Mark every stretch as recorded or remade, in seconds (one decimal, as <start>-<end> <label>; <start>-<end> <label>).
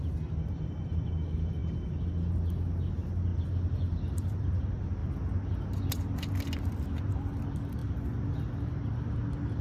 0.0-3.3 recorded; 3.3-4.6 remade; 4.6-9.6 recorded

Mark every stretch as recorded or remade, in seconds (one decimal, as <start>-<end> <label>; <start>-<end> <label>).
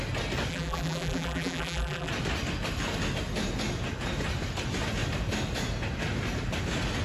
0.0-0.5 recorded; 0.5-2.1 remade; 2.1-7.0 recorded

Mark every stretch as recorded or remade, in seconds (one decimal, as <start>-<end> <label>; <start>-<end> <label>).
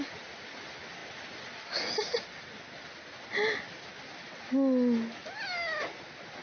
0.0-6.4 recorded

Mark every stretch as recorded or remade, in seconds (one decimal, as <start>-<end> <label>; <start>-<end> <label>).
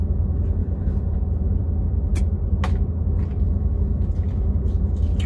0.0-0.6 recorded; 0.6-1.6 remade; 1.6-5.3 recorded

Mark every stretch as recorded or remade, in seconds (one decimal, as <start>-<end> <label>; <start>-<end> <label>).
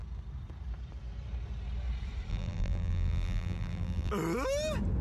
0.0-2.3 recorded; 2.3-4.1 remade; 4.1-5.0 recorded